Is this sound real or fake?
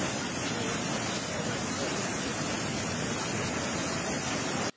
real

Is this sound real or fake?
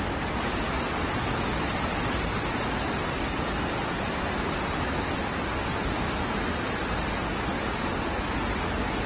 real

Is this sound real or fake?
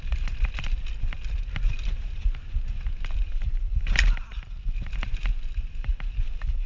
real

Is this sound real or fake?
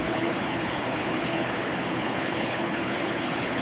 fake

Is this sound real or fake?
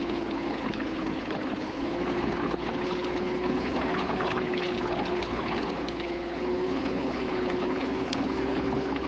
fake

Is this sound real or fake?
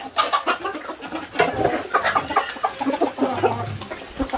real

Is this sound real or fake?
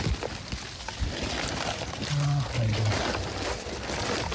real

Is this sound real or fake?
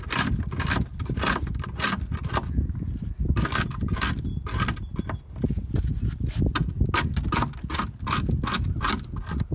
real